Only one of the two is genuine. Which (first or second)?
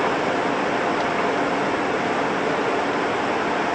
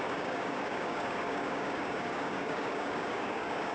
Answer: first